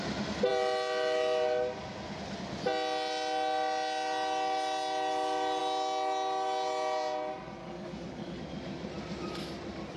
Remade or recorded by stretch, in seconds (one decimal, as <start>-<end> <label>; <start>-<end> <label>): 0.0-7.6 recorded; 7.6-8.4 remade; 8.4-10.0 recorded

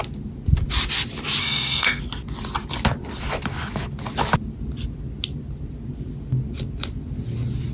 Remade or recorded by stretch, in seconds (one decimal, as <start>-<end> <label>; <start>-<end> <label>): 0.0-1.4 recorded; 1.4-2.0 remade; 2.0-7.7 recorded

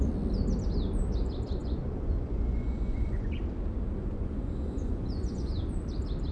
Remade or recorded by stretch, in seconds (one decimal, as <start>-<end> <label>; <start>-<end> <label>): 0.0-1.6 recorded; 1.6-3.4 remade; 3.4-4.0 recorded; 4.0-5.6 remade; 5.6-6.3 recorded

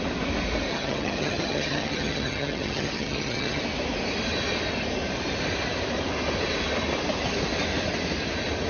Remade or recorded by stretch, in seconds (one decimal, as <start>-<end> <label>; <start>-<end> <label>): 0.0-0.7 recorded; 0.7-3.6 remade; 3.6-8.7 recorded

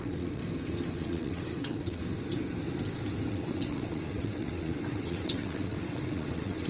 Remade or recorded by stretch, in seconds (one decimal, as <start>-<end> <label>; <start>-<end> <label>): 0.0-0.4 remade; 0.4-0.9 recorded; 0.9-2.0 remade; 2.0-3.3 recorded; 3.3-6.7 remade

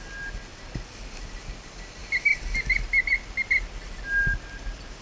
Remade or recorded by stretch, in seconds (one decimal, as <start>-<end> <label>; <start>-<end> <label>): 0.0-5.0 recorded